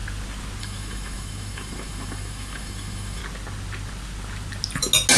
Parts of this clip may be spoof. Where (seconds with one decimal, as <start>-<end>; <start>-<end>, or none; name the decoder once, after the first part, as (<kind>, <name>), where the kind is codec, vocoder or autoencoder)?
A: 0.6-3.2 (autoencoder, DAC-VAE)